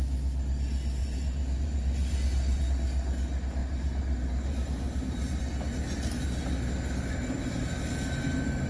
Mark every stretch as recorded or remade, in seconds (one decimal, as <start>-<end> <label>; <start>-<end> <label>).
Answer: 0.0-1.0 recorded; 1.0-2.7 remade; 2.7-3.6 recorded; 3.6-5.4 remade; 5.4-8.7 recorded